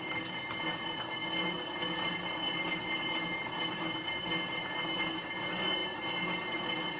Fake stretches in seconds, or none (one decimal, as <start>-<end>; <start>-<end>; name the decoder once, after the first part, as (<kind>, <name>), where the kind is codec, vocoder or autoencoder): none